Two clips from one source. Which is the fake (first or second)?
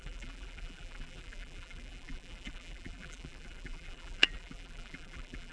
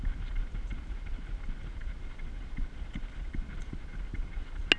first